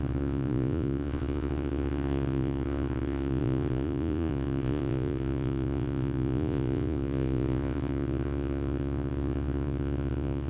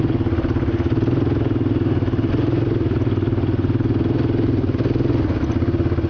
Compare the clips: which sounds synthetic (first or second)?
first